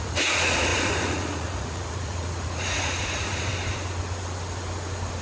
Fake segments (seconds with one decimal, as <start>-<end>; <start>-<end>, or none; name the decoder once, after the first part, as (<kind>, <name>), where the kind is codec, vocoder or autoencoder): 0.0-3.5 (vocoder, Vocos)